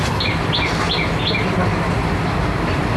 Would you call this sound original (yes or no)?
yes